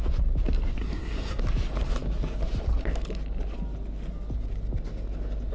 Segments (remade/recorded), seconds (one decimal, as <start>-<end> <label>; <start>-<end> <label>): 0.0-0.8 recorded; 0.8-1.4 remade; 1.4-5.5 recorded